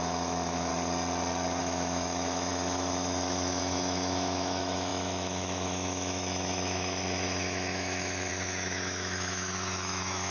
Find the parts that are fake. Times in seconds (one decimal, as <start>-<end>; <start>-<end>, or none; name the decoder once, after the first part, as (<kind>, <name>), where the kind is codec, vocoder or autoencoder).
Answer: 0.0-0.7 (autoencoder, DAC-VAE); 1.6-10.3